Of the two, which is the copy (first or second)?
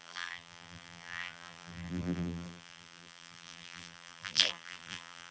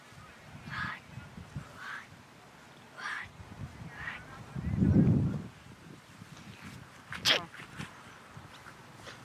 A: first